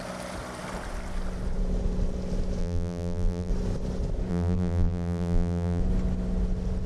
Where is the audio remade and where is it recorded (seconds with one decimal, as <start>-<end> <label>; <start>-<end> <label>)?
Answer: 0.0-2.6 recorded; 2.6-3.5 remade; 3.5-4.3 recorded; 4.3-5.8 remade; 5.8-6.9 recorded